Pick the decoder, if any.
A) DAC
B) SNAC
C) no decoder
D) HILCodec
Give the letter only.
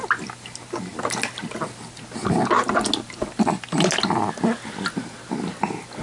C